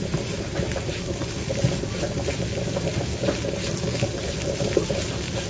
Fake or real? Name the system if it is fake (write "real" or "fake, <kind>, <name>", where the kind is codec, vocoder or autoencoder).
real